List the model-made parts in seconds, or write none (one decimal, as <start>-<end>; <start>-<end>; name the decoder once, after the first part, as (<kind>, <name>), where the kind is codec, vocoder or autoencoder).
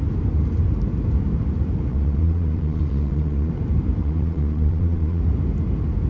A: 1.9-3.5 (vocoder, Vocos); 4.0-5.2